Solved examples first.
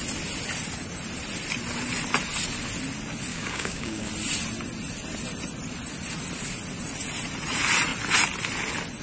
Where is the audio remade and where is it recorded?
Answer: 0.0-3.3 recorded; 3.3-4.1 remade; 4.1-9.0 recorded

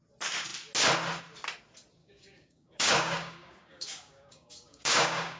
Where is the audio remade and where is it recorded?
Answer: 0.0-2.0 recorded; 2.0-5.4 remade

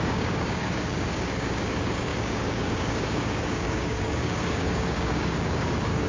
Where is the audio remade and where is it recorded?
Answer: 0.0-6.1 remade